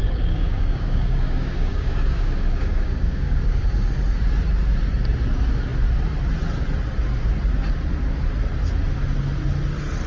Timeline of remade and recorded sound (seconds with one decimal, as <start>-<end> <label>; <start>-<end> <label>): 0.0-3.6 remade; 3.6-10.1 recorded